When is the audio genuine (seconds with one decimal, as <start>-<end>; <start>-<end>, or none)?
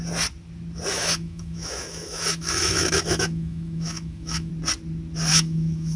0.0-0.9; 4.5-5.3